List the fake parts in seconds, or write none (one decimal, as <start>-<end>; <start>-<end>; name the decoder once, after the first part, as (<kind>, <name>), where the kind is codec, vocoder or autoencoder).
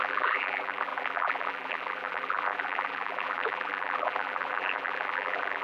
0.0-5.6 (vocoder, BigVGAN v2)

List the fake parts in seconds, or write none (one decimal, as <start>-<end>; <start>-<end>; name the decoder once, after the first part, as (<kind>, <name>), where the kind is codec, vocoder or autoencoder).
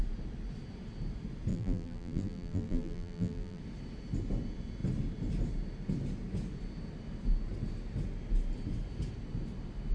1.5-3.6 (vocoder, BigVGAN v2)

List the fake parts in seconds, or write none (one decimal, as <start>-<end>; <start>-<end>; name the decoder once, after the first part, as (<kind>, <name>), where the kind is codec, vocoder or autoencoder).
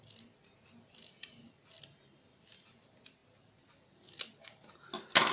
none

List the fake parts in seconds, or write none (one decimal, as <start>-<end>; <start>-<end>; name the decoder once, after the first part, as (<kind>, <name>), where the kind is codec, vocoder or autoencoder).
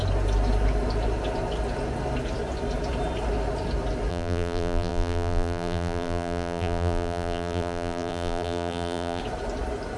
4.1-9.2 (vocoder, BigVGAN v2)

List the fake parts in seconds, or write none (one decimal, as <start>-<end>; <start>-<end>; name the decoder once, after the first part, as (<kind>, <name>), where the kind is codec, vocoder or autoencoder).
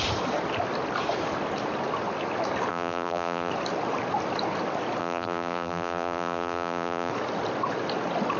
2.7-3.5 (vocoder, BigVGAN v2); 5.0-7.1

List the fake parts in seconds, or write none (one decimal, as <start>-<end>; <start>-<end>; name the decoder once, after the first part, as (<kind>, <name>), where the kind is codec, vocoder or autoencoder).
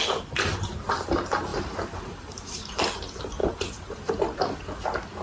1.5-2.6 (vocoder, BigVGAN v2); 3.4-4.1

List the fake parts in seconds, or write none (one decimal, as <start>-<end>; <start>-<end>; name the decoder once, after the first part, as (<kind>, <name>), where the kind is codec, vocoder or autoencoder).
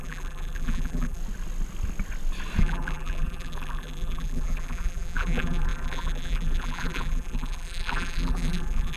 0.0-1.2 (vocoder, BigVGAN v2); 2.6-9.0